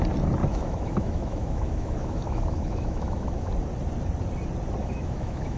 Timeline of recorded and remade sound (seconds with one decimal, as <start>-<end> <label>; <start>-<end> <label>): 0.0-0.4 recorded; 0.4-3.5 remade; 3.5-4.8 recorded; 4.8-5.6 remade